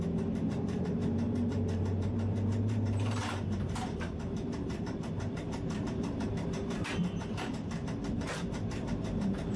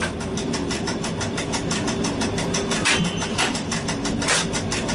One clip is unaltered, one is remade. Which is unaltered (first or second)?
second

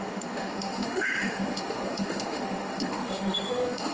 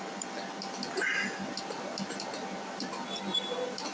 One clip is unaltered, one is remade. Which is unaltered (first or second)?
second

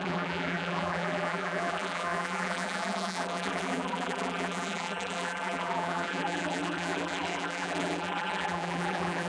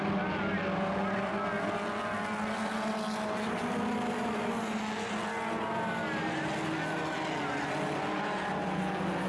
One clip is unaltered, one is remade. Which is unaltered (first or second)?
second